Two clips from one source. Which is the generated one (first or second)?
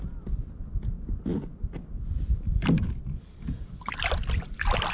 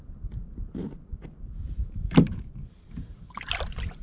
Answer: second